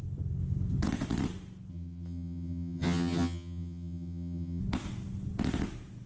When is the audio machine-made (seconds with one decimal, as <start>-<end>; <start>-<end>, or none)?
1.7-4.6